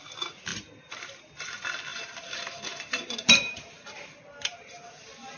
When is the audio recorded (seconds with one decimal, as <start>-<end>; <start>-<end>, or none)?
0.0-1.9